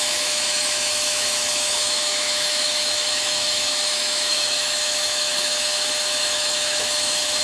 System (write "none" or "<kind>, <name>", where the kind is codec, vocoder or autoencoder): autoencoder, DAC-VAE